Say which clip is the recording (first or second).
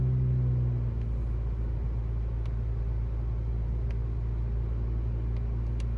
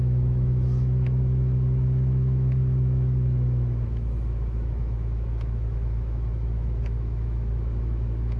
first